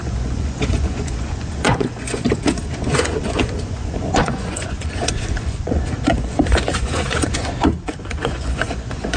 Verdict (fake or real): fake